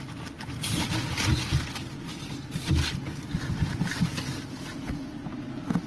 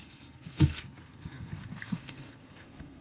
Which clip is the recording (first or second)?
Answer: first